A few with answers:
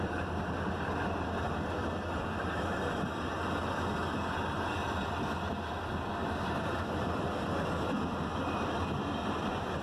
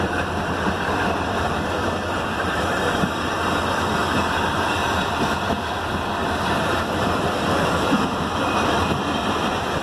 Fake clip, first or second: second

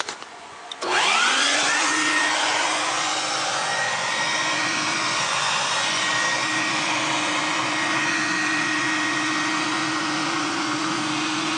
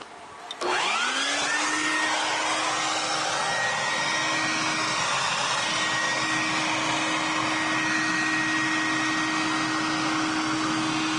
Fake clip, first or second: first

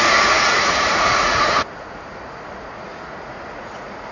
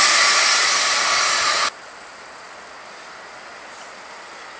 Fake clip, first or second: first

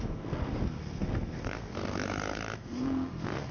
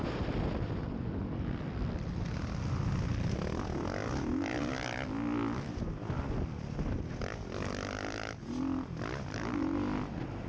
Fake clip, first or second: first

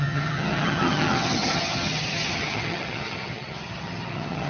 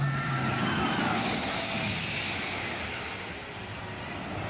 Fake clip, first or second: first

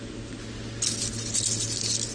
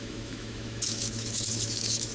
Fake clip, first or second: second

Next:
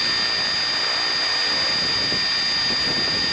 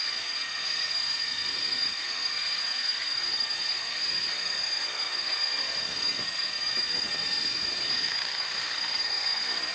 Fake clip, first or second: second